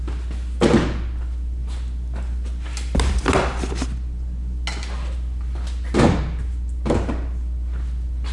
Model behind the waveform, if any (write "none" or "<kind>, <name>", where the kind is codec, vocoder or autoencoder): none